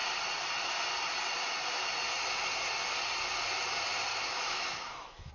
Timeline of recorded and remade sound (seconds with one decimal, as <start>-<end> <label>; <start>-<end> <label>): 0.0-4.1 recorded; 4.1-5.3 remade